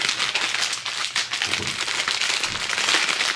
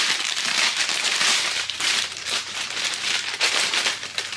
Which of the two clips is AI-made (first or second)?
second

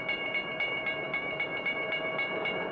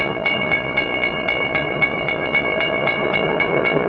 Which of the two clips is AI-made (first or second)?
second